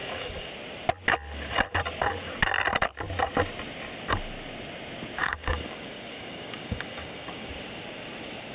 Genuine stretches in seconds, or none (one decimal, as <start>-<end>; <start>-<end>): 0.5-5.2; 7.5-8.5